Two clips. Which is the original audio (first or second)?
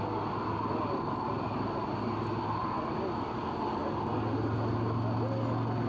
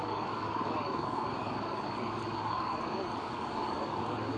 first